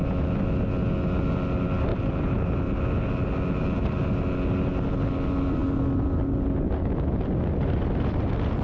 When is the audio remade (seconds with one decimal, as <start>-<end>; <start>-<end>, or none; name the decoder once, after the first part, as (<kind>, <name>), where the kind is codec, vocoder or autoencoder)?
none